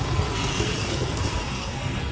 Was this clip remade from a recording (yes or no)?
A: yes